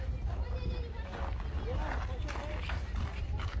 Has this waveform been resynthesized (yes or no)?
no